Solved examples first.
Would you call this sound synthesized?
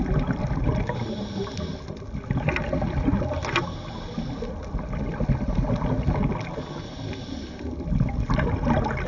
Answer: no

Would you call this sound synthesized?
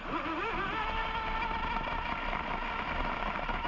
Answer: no